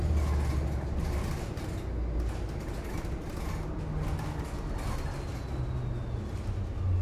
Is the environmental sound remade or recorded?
recorded